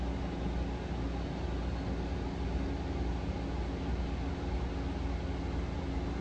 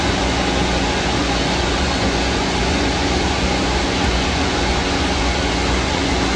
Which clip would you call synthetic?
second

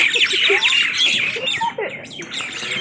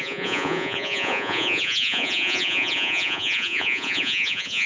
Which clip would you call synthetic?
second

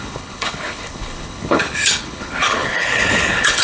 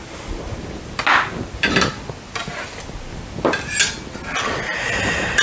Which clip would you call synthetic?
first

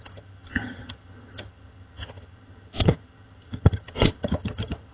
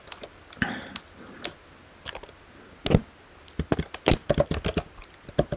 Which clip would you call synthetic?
first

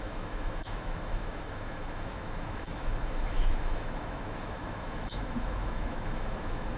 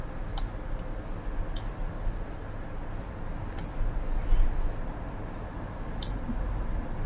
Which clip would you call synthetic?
first